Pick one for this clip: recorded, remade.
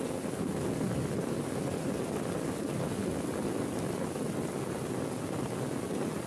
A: recorded